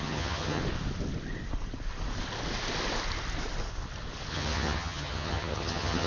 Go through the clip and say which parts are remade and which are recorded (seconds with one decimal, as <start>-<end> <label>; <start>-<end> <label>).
0.0-0.6 remade; 0.6-4.3 recorded; 4.3-6.1 remade